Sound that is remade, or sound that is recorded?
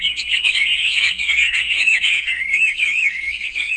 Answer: remade